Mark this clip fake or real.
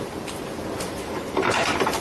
fake